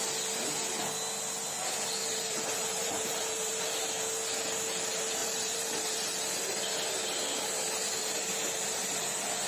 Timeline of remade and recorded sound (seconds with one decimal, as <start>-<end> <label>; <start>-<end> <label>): 0.0-2.0 recorded; 2.0-3.7 remade; 3.7-5.2 recorded; 5.2-6.6 remade; 6.6-8.0 recorded; 8.0-9.0 remade; 9.0-9.5 recorded

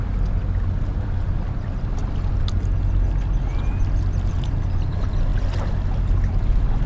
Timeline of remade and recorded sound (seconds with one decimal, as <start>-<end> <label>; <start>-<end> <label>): 0.0-6.9 recorded

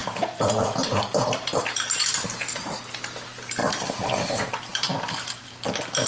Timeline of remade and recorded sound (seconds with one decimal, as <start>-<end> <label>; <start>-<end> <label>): 0.0-2.1 remade; 2.1-3.6 recorded; 3.6-4.1 remade; 4.1-4.7 recorded; 4.7-5.5 remade; 5.5-6.1 recorded

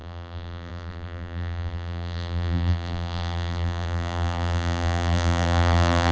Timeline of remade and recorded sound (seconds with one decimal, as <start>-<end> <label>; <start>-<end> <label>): 0.0-6.1 remade